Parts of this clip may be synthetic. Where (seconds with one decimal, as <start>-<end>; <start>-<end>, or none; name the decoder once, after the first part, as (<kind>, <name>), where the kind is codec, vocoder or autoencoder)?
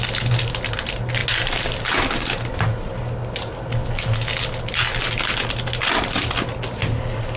none